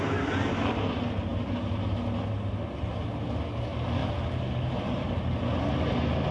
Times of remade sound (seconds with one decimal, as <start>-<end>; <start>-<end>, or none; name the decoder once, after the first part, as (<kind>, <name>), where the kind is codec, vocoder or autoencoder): none